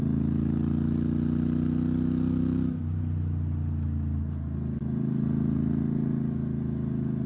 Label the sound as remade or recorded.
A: recorded